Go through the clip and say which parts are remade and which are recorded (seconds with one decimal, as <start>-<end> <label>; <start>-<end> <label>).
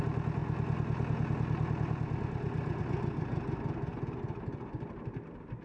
0.0-5.6 recorded